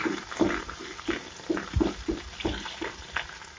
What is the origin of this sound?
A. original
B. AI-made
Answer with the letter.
A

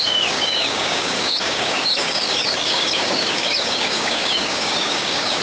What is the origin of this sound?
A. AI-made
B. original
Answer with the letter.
A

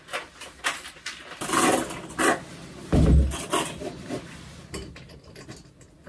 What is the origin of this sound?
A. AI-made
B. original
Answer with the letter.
B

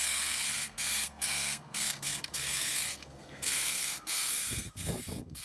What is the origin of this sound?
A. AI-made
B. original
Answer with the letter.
A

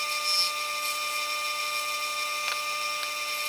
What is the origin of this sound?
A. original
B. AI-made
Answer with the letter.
A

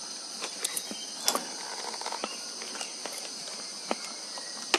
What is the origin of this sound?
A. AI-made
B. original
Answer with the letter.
B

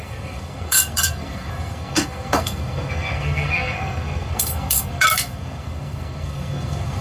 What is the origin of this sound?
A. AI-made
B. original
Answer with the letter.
A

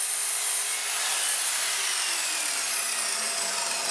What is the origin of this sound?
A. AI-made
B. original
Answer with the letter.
B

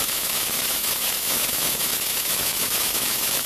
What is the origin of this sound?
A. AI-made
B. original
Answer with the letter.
A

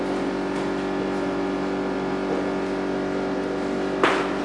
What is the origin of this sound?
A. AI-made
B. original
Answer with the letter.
B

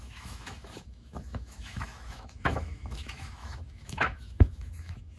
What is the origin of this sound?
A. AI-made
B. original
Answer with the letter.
A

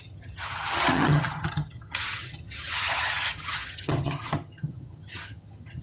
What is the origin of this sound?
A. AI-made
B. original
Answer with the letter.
A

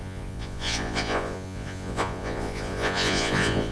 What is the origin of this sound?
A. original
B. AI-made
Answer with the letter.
B